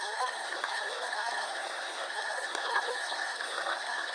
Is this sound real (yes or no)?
no